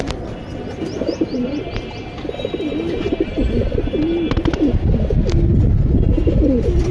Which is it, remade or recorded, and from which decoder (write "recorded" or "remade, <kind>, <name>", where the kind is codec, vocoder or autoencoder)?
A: recorded